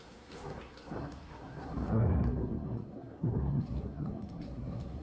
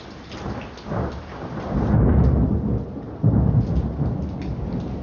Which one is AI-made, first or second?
first